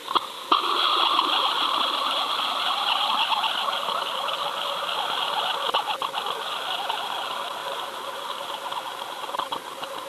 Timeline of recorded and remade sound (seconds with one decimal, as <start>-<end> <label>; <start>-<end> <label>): 0.0-7.6 recorded; 7.6-8.5 remade; 8.5-10.1 recorded